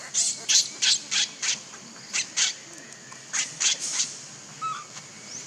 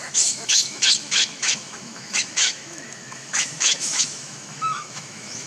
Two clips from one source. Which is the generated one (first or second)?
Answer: second